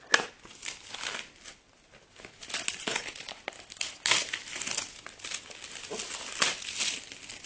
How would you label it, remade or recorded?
recorded